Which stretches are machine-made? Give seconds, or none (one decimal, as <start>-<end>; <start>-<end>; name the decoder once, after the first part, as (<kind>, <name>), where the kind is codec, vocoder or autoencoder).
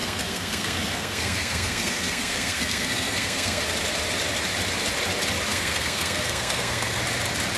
0.0-3.6 (codec, SNAC); 5.5-7.0